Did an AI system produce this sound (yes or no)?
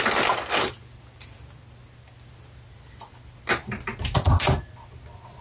no